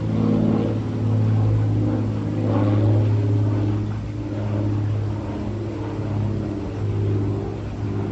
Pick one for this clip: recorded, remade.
recorded